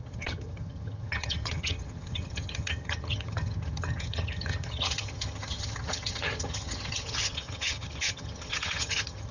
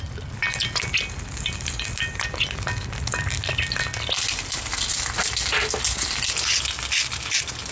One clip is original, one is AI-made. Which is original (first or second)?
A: second